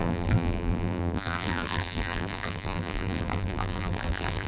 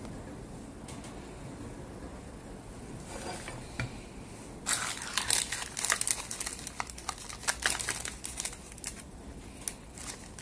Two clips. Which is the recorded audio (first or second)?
second